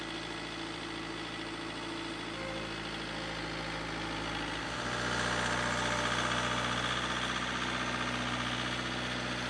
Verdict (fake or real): real